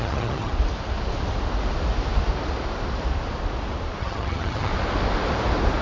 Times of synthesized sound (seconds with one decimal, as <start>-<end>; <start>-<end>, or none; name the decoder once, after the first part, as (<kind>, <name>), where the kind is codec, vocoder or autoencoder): 0.0-0.5 (vocoder, HiFi-GAN); 4.0-4.7